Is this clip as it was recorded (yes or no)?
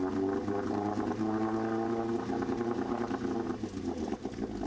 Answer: yes